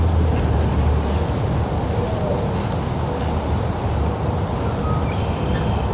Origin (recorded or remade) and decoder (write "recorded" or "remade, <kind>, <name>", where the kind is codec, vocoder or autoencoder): recorded